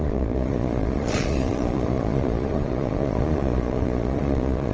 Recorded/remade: remade